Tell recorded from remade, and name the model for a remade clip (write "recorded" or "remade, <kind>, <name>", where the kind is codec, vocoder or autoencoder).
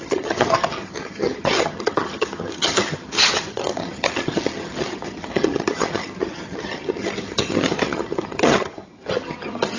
remade, vocoder, HiFi-GAN